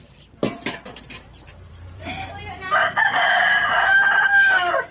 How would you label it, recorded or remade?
remade